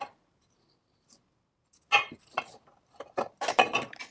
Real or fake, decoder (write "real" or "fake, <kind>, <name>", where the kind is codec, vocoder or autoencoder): real